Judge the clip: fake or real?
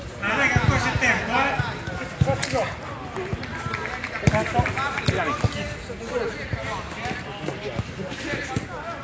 real